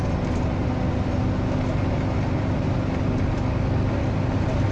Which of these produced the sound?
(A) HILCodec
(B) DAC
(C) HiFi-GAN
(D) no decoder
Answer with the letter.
D